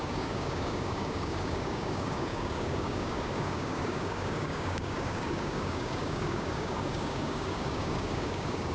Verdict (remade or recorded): remade